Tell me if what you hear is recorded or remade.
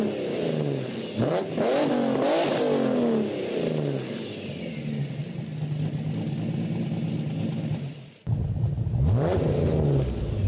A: recorded